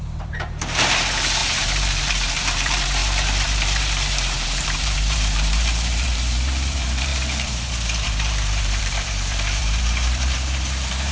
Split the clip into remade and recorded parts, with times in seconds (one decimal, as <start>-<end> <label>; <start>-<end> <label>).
0.0-11.1 remade

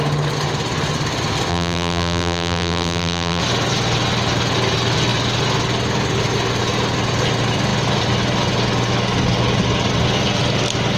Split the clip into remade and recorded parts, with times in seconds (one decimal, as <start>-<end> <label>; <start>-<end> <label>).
0.0-1.5 recorded; 1.5-3.4 remade; 3.4-11.0 recorded

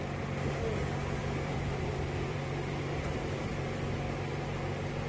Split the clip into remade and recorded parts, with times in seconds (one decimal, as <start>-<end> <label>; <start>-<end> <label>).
0.0-1.2 recorded; 1.2-3.8 remade; 3.8-5.1 recorded

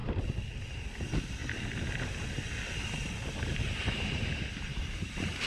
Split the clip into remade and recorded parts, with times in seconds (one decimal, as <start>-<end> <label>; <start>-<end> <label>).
0.0-4.7 recorded; 4.7-5.5 remade

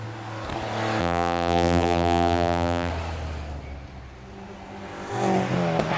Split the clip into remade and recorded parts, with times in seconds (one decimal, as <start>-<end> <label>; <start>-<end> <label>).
0.0-1.0 recorded; 1.0-2.9 remade; 2.9-6.0 recorded

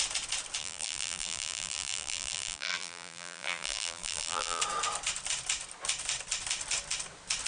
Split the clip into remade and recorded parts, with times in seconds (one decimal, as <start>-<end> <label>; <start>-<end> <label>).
0.0-0.6 recorded; 0.6-4.6 remade; 4.6-7.5 recorded